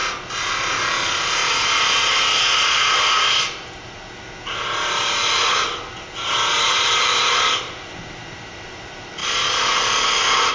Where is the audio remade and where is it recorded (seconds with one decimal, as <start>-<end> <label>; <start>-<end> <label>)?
0.0-0.9 recorded; 0.9-1.4 remade; 1.4-6.5 recorded; 6.5-9.2 remade; 9.2-10.5 recorded